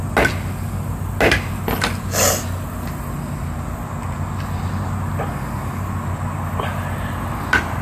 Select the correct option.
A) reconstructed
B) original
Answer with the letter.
B